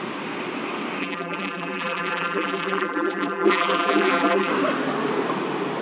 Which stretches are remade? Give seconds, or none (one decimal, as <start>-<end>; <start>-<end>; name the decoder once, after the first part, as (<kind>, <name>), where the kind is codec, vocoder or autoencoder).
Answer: 1.0-4.5 (vocoder, BigVGAN v2)

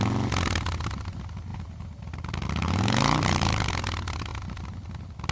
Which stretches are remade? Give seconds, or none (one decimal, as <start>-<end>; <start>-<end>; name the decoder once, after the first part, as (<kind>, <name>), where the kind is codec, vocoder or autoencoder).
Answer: 1.5-3.7 (vocoder, BigVGAN v2)

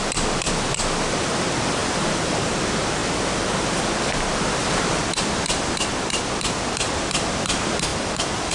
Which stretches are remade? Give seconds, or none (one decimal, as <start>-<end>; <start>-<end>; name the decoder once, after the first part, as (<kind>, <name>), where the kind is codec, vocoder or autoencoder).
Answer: 1.8-2.6 (vocoder, BigVGAN v2); 3.0-5.0; 7.9-8.5

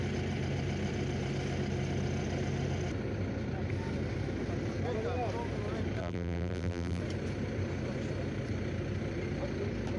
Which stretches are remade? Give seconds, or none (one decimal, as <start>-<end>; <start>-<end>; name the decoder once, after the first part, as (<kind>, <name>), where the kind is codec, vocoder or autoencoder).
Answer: 6.0-7.0 (vocoder, BigVGAN v2)

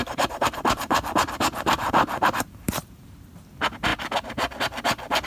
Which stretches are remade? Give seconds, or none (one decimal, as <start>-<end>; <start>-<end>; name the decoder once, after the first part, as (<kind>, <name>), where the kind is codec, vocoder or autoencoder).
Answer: 0.0-3.2 (vocoder, BigVGAN v2)

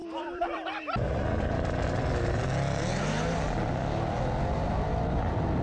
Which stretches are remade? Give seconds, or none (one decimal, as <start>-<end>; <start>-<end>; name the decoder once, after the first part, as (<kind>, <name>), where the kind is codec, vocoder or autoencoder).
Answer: 0.0-3.4 (vocoder, BigVGAN v2)

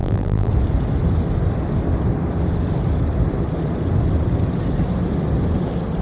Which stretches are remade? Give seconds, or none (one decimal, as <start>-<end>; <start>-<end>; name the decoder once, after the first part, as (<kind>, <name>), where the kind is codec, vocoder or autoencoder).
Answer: 0.0-0.5 (vocoder, BigVGAN v2)

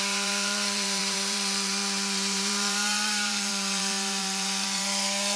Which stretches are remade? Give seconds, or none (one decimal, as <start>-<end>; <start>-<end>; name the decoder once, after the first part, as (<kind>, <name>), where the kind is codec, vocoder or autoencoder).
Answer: 0.0-5.4 (vocoder, BigVGAN v2)